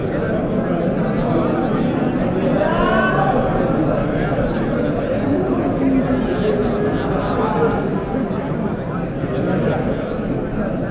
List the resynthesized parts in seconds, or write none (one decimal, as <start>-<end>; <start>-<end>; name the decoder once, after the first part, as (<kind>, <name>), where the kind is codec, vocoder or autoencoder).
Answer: none